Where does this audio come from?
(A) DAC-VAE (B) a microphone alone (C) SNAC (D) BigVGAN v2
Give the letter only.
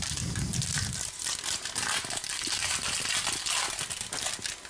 B